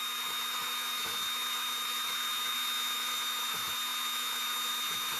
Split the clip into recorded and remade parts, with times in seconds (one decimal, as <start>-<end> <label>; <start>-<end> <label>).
0.0-5.2 remade